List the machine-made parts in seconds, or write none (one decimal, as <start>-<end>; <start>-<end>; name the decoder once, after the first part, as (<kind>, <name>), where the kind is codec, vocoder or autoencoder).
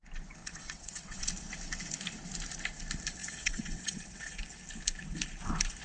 0.4-1.3 (vocoder, WaveNeXt); 3.2-4.4